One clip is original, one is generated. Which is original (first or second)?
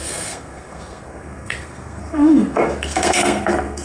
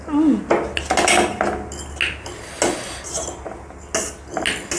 second